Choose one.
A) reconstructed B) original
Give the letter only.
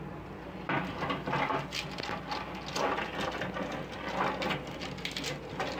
B